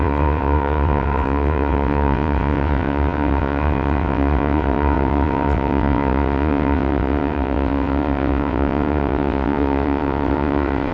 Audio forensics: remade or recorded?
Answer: remade